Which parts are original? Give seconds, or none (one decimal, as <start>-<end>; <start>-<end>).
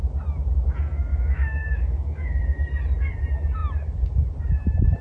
0.0-1.1; 2.4-5.0